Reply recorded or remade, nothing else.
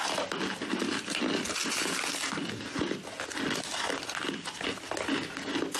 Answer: recorded